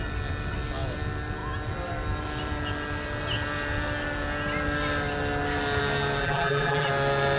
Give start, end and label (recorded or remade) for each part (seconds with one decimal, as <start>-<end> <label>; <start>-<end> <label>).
0.0-6.2 recorded; 6.2-6.9 remade; 6.9-7.4 recorded